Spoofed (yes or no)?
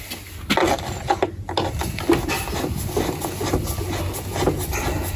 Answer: no